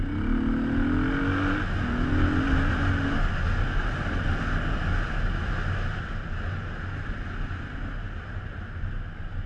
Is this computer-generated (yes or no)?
no